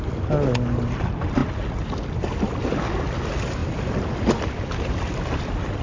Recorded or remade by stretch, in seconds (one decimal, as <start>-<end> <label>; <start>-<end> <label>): 0.0-3.6 recorded; 3.6-4.5 remade; 4.5-5.8 recorded